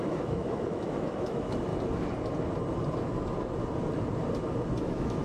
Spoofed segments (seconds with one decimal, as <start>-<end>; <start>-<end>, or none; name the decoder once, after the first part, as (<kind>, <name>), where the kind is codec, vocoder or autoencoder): 0.0-1.7 (autoencoder, DAC-VAE); 4.8-5.2